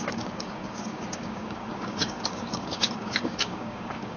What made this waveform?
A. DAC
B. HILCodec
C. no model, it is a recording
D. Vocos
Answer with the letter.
A